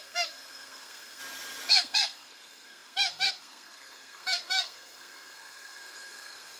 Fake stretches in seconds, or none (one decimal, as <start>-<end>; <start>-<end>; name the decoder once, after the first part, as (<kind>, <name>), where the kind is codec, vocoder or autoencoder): 0.0-1.2 (codec, SNAC); 1.7-6.6